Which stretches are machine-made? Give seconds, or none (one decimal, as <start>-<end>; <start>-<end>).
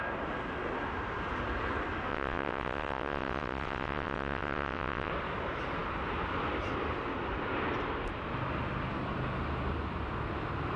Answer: 2.1-5.1